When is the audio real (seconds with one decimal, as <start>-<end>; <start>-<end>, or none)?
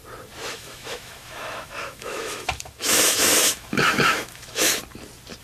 0.0-0.5; 4.7-5.4